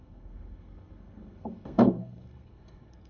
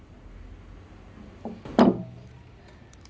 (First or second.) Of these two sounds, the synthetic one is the first